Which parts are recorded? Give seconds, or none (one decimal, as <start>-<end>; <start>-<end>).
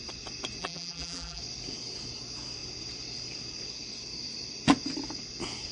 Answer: 0.0-0.6; 1.4-5.7